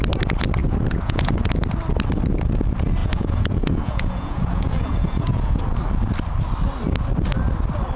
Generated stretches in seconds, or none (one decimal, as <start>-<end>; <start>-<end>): 0.6-1.5; 3.0-5.6